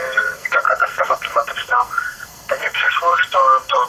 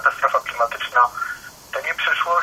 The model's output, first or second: first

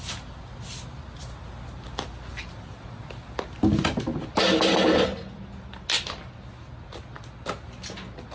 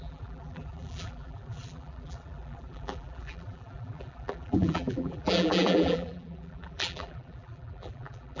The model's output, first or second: second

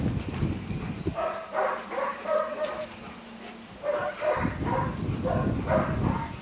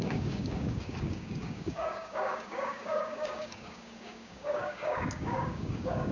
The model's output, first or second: second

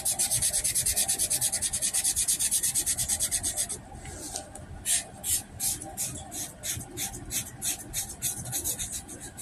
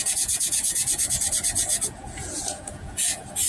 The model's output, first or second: second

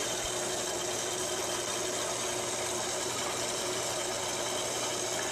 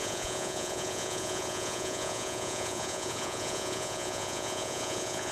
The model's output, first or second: second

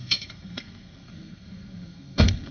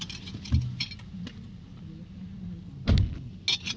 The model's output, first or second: first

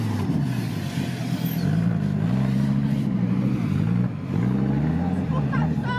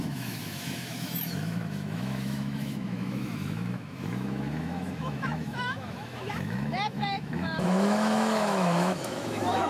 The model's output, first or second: second